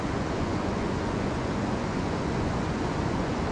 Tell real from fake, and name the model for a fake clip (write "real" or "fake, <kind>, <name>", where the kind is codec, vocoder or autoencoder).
fake, vocoder, Vocos